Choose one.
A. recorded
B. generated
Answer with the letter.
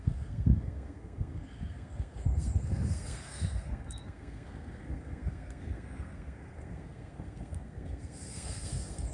B